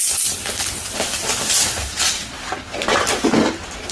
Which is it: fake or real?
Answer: real